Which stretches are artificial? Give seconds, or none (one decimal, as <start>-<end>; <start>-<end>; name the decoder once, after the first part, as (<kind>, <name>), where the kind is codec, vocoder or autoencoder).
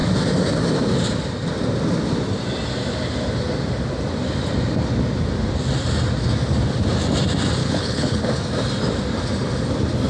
7.6-8.2 (codec, HILCodec)